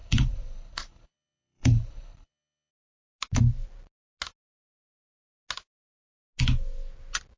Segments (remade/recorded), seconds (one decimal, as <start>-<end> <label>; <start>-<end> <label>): 0.0-2.7 remade; 2.7-7.4 recorded